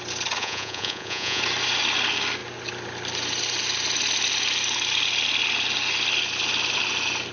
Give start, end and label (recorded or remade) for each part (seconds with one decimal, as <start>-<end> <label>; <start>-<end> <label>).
0.0-0.4 recorded; 0.4-1.4 remade; 1.4-7.3 recorded